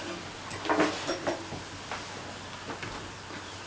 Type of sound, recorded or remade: recorded